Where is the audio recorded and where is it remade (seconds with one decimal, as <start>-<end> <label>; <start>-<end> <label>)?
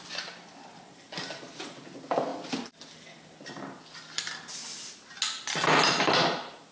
0.0-2.3 recorded; 2.3-4.3 remade; 4.3-6.7 recorded